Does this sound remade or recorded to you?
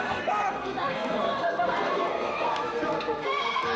remade